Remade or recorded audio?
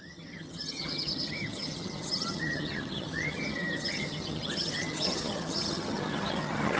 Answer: remade